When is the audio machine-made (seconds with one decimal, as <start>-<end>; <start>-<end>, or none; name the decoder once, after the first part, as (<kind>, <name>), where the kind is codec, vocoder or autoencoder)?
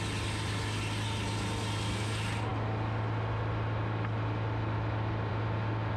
none